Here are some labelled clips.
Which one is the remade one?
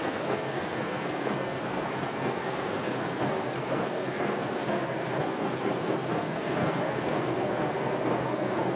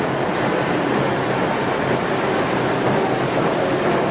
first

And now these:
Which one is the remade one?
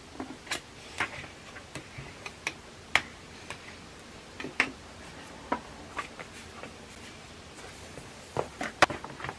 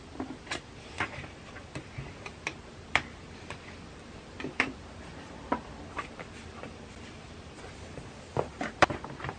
second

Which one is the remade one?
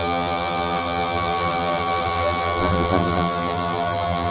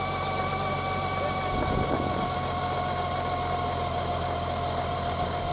first